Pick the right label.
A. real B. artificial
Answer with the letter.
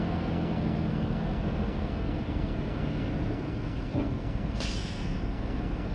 B